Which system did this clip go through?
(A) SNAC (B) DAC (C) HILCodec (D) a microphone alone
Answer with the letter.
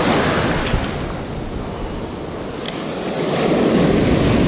D